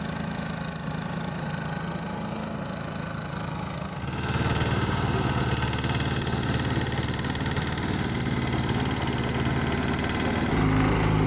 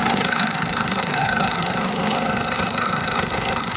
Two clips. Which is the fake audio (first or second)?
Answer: second